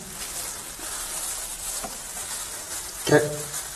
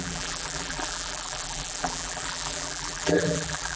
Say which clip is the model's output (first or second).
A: second